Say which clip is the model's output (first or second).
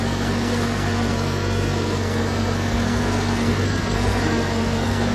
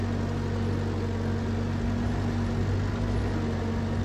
first